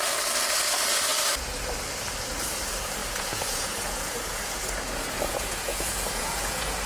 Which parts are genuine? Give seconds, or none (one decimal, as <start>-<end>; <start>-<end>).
0.0-3.0